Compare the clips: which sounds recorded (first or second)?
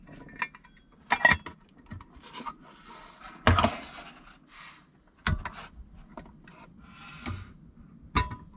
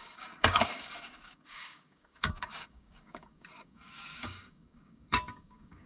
first